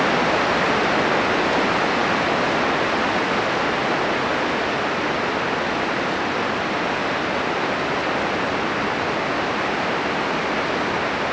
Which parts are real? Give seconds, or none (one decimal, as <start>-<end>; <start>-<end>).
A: 0.0-11.3